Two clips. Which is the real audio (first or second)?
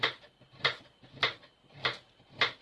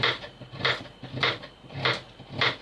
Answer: second